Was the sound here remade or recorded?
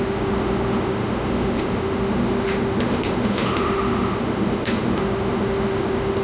remade